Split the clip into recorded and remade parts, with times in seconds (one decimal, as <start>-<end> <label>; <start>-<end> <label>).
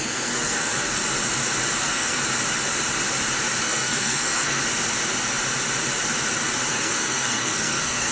0.0-1.0 remade; 1.0-1.8 recorded; 1.8-2.2 remade; 2.2-3.6 recorded; 3.6-4.6 remade; 4.6-6.7 recorded; 6.7-8.1 remade